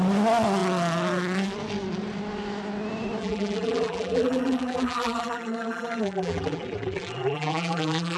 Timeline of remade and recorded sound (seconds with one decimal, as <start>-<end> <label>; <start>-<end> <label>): 0.0-3.2 recorded; 3.2-8.2 remade